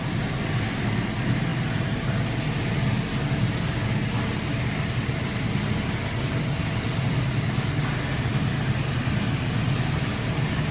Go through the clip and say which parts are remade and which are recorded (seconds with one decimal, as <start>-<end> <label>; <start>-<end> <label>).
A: 0.0-10.7 recorded